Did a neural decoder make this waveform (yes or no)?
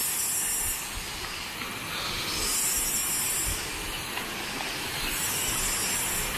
no